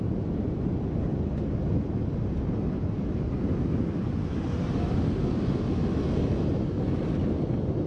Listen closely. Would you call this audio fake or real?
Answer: real